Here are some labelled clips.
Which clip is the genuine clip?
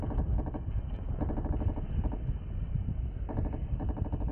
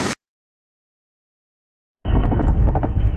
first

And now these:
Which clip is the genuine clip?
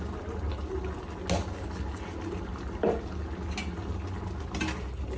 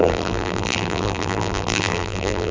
first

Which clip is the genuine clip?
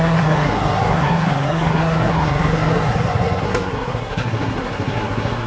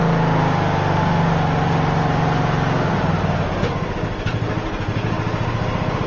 second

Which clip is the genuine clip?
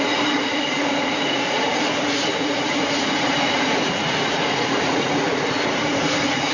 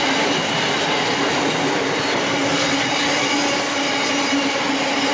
second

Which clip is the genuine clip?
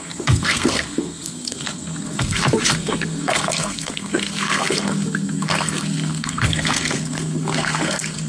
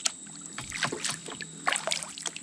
second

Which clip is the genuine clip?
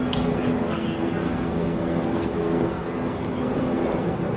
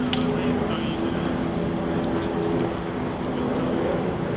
second